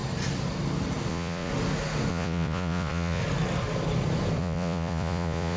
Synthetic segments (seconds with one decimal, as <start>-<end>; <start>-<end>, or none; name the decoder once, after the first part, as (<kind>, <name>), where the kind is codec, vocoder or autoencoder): 1.1-1.5 (vocoder, Vocos); 2.1-3.2; 4.4-5.6

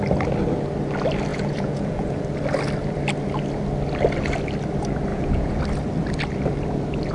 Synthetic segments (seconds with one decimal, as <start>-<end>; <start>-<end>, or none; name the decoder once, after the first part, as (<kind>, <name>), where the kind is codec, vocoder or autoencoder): 1.3-2.2 (vocoder, Vocos); 5.1-5.6

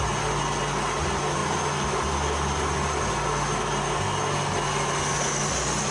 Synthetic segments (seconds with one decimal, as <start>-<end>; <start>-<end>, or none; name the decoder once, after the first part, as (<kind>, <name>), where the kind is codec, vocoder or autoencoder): none

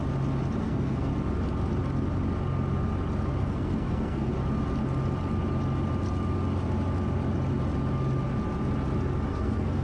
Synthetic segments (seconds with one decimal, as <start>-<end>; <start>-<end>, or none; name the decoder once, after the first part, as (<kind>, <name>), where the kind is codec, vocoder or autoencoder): 0.6-1.1 (codec, SNAC); 3.4-4.3; 9.3-9.8

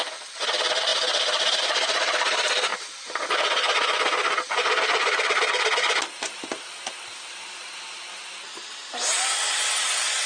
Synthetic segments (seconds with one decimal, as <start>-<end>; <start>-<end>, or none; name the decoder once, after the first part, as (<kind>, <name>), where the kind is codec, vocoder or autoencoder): none